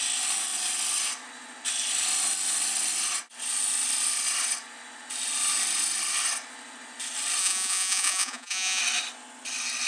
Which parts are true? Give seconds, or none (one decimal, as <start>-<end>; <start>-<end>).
0.0-7.4; 8.8-9.9